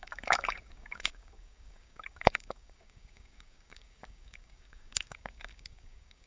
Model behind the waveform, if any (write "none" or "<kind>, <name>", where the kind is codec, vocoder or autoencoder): codec, DAC